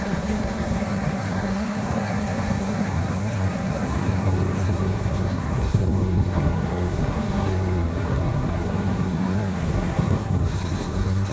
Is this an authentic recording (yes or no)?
no